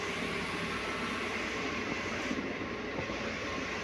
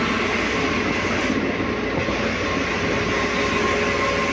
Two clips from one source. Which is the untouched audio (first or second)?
second